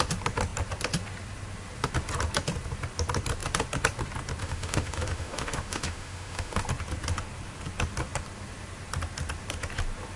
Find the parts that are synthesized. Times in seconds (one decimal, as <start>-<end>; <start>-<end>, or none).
4.4-6.6